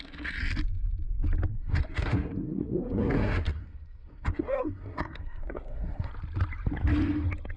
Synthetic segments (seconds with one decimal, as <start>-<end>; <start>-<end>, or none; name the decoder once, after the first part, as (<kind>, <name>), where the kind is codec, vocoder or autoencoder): 1.5-6.1 (codec, SNAC)